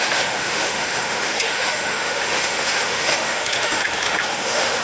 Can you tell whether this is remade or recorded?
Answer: remade